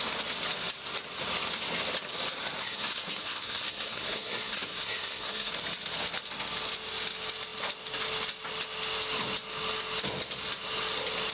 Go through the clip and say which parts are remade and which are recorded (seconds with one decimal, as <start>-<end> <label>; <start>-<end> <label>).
0.0-2.6 recorded; 2.6-5.5 remade; 5.5-11.3 recorded